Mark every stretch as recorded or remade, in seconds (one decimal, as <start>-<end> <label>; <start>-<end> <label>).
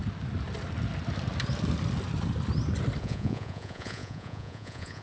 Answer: 0.0-3.0 recorded; 3.0-5.0 remade